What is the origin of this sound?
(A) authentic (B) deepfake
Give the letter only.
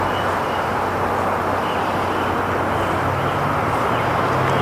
A